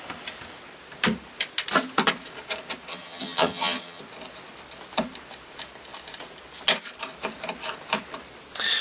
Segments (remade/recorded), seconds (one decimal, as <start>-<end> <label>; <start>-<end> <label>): 0.0-2.9 recorded; 2.9-4.0 remade; 4.0-8.8 recorded